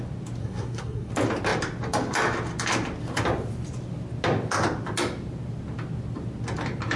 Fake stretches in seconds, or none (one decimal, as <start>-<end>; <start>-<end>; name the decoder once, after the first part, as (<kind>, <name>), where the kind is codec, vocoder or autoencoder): 0.4-1.1 (codec, SNAC)